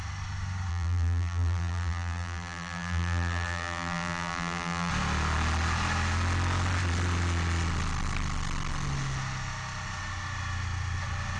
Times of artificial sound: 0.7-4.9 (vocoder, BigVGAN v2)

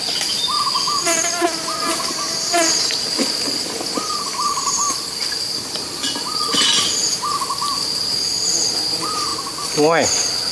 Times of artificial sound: 4.8-6.9 (vocoder, BigVGAN v2)